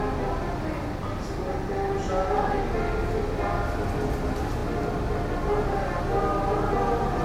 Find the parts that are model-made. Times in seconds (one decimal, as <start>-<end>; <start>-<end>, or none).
none